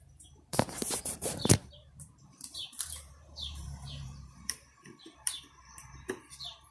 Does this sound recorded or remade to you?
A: remade